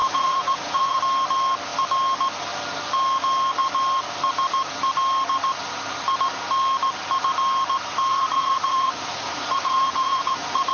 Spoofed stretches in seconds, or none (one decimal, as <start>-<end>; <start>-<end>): 0.0-1.0; 8.1-10.7